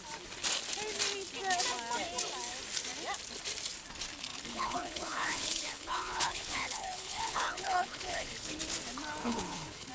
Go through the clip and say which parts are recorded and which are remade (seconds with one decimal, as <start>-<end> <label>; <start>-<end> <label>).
0.0-4.3 recorded; 4.3-8.6 remade; 8.6-9.2 recorded; 9.2-9.9 remade

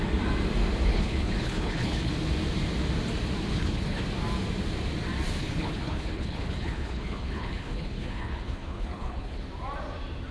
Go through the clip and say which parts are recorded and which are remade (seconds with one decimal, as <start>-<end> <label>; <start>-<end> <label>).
0.0-0.9 recorded; 0.9-2.1 remade; 2.1-3.5 recorded; 3.5-4.0 remade; 4.0-5.4 recorded; 5.4-9.4 remade; 9.4-10.3 recorded

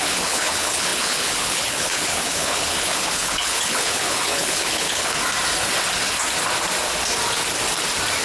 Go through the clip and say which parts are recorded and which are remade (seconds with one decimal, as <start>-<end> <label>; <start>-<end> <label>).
0.0-5.2 remade; 5.2-8.2 recorded

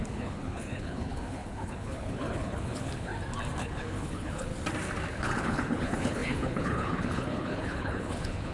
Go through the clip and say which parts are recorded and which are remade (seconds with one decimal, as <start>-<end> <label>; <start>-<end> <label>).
0.0-3.1 remade; 3.1-3.6 recorded; 3.6-4.5 remade; 4.5-5.1 recorded; 5.1-8.5 remade

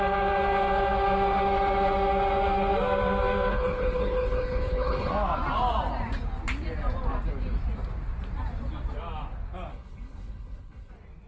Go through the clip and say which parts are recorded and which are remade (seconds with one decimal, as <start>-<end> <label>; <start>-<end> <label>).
0.0-3.5 recorded; 3.5-5.1 remade; 5.1-9.7 recorded; 9.7-10.9 remade; 10.9-11.3 recorded

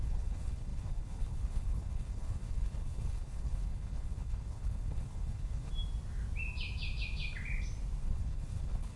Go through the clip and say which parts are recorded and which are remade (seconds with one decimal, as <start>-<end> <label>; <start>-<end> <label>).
0.0-5.7 remade; 5.7-8.0 recorded; 8.0-9.0 remade

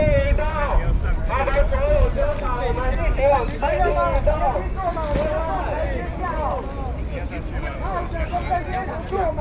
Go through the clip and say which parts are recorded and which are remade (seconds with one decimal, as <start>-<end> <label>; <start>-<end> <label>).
0.0-9.4 recorded